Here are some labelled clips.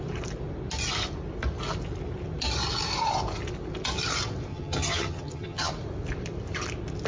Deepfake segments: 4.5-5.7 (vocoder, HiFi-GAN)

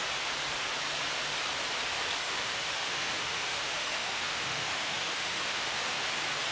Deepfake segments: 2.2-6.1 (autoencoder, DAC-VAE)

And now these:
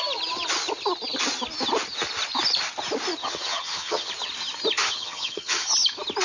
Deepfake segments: 3.2-4.1 (vocoder, HiFi-GAN); 4.8-5.7